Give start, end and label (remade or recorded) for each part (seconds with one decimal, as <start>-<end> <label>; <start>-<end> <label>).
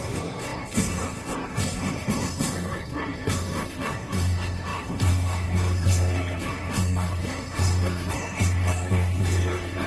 0.0-9.9 remade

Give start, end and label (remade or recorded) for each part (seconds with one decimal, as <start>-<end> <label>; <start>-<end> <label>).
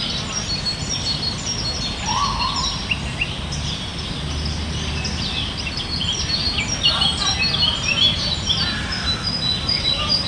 0.0-10.3 recorded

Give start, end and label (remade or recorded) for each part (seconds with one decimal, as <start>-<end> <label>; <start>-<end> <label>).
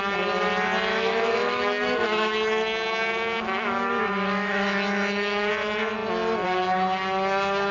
0.0-0.9 recorded; 0.9-5.5 remade; 5.5-7.7 recorded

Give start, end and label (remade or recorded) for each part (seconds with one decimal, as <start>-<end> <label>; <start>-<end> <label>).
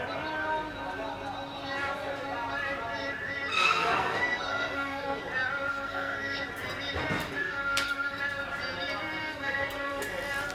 0.0-3.5 recorded; 3.5-5.2 remade; 5.2-5.7 recorded; 5.7-6.4 remade; 6.4-7.4 recorded; 7.4-8.2 remade; 8.2-9.2 recorded; 9.2-10.0 remade; 10.0-10.5 recorded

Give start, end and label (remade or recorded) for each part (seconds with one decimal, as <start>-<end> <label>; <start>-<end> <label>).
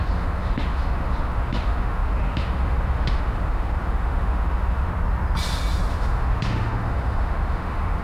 0.0-4.9 remade; 4.9-5.9 recorded; 5.9-8.0 remade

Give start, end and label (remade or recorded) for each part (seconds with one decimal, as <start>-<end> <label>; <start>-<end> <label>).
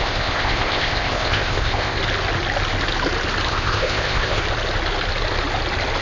0.0-2.0 remade; 2.0-3.5 recorded; 3.5-4.4 remade; 4.4-6.0 recorded